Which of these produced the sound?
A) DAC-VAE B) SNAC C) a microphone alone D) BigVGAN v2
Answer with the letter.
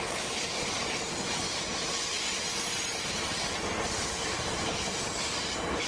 C